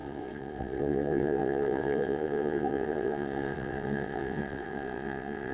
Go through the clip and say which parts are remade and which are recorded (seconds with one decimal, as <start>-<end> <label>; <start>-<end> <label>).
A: 0.0-5.5 remade